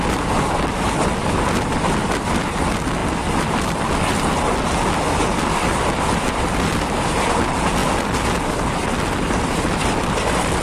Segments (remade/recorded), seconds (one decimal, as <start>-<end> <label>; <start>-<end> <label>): 0.0-10.6 recorded